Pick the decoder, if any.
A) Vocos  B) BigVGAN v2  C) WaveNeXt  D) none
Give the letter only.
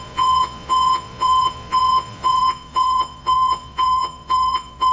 A